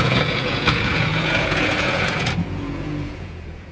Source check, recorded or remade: remade